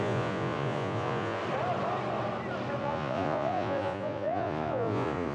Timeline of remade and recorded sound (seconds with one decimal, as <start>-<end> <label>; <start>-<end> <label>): 0.0-1.4 remade; 1.4-2.8 recorded; 2.8-5.3 remade